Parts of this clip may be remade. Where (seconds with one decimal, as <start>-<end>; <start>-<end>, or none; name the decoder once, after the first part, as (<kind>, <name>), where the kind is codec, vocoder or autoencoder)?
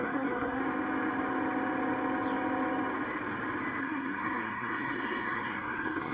0.0-0.6 (codec, SNAC); 3.8-6.1